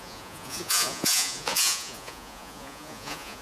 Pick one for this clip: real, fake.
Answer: fake